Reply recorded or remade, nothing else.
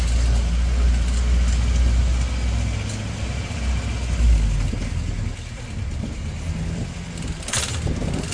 recorded